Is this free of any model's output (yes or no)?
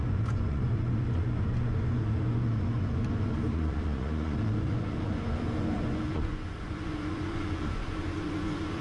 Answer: no